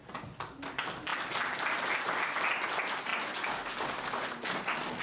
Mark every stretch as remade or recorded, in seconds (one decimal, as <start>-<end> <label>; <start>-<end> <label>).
0.0-5.0 recorded